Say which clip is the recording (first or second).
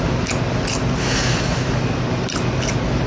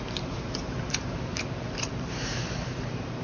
first